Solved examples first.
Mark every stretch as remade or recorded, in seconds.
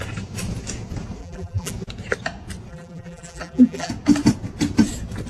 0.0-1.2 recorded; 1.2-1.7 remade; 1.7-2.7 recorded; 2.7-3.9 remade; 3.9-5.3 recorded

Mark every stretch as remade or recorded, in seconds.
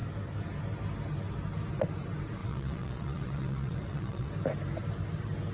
0.0-2.4 recorded; 2.4-4.3 remade; 4.3-5.5 recorded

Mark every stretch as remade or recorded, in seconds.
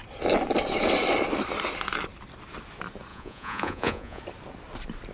0.0-3.1 recorded; 3.1-4.2 remade; 4.2-5.1 recorded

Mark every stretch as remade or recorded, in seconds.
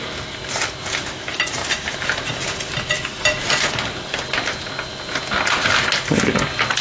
0.0-6.8 recorded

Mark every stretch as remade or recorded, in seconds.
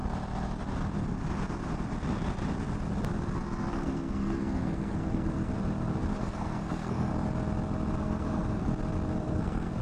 0.0-3.7 recorded; 3.7-5.5 remade; 5.5-6.2 recorded; 6.2-7.1 remade; 7.1-8.0 recorded; 8.0-8.7 remade; 8.7-9.2 recorded; 9.2-9.8 remade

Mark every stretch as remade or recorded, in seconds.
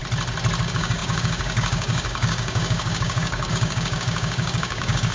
0.0-0.6 recorded; 0.6-5.1 remade